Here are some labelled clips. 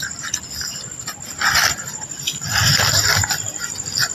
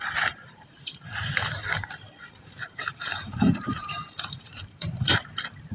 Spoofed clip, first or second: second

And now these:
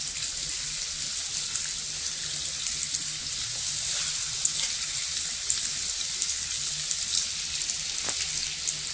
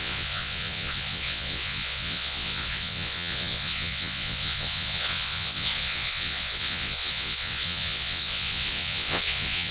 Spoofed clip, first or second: second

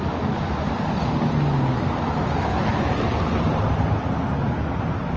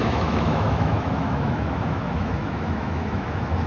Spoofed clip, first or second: second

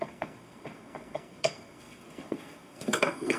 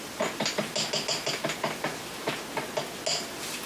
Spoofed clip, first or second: first